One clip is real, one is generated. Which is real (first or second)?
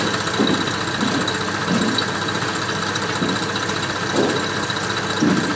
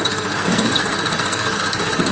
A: first